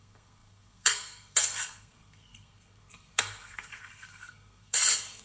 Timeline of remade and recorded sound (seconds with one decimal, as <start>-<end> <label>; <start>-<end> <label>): 0.0-5.2 remade